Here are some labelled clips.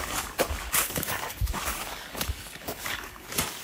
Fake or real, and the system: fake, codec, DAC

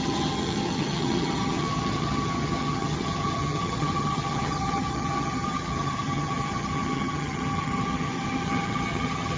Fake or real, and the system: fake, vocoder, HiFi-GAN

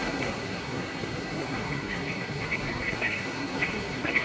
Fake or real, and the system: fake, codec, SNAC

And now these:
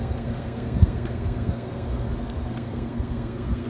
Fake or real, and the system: fake, codec, SNAC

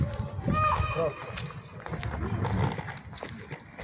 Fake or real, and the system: real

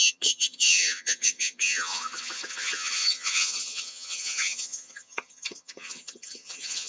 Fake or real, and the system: fake, vocoder, HiFi-GAN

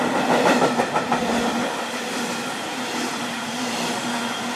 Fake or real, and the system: fake, vocoder, BigVGAN v2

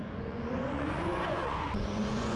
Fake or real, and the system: fake, vocoder, Vocos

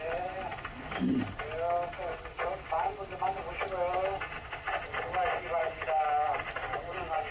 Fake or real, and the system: real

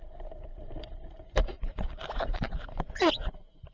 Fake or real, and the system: fake, vocoder, BigVGAN v2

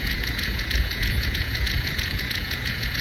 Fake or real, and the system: fake, vocoder, Vocos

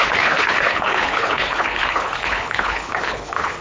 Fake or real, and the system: fake, codec, HILCodec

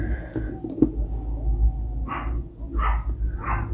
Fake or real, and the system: real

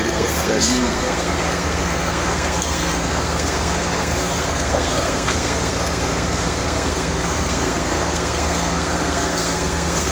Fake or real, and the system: fake, codec, SNAC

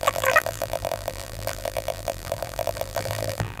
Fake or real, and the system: fake, vocoder, BigVGAN v2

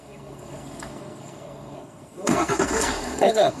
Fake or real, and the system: fake, codec, SNAC